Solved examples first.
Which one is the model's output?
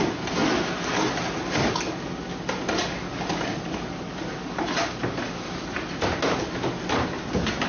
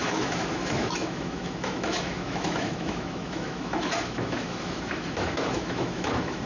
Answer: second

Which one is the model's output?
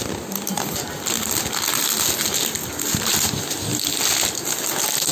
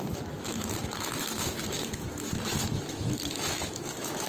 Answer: second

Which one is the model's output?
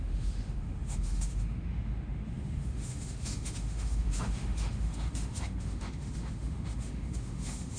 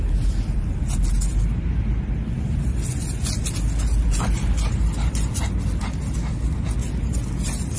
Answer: first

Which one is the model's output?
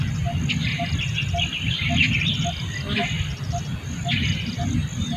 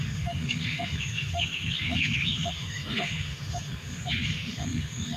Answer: second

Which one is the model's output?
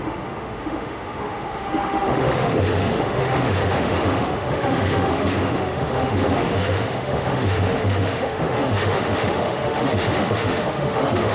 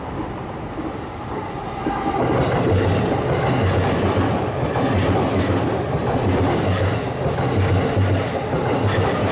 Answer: first